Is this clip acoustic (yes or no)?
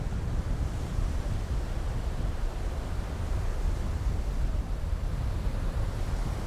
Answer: yes